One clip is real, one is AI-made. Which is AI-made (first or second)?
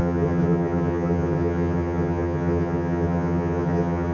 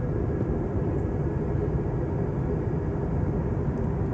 first